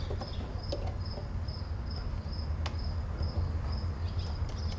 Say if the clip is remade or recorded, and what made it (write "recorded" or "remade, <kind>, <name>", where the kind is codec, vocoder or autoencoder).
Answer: recorded